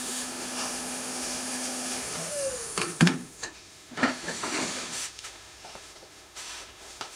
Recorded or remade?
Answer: remade